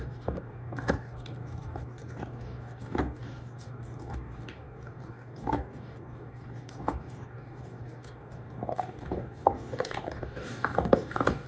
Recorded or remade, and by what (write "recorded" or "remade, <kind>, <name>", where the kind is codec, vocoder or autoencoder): remade, codec, DAC